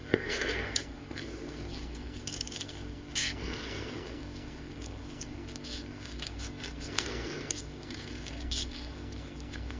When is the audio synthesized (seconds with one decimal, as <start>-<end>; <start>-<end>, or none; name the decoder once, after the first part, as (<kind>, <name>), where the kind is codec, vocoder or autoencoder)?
0.0-9.8 (codec, SNAC)